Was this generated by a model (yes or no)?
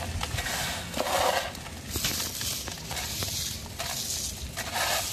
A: no